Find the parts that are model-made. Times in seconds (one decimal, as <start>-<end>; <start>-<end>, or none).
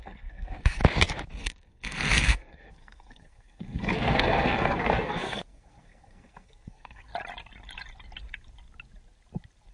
0.0-0.8; 1.4-7.1